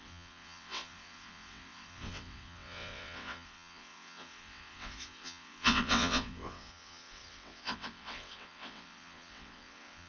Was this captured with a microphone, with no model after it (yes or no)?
no